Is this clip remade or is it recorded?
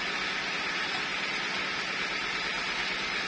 recorded